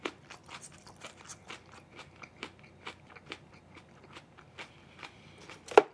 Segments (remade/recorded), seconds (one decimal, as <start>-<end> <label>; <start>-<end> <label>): 0.0-1.3 remade; 1.3-4.8 recorded; 4.8-5.9 remade